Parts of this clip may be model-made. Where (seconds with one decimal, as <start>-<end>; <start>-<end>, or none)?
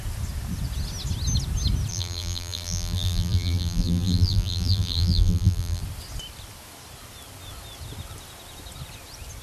1.9-5.8